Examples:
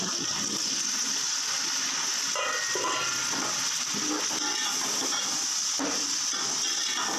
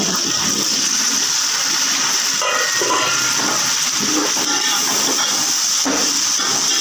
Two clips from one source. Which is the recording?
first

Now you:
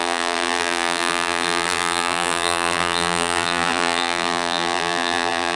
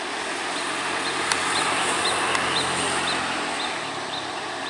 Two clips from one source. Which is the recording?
second